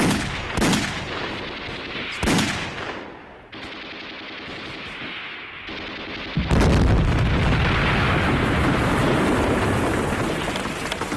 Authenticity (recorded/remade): recorded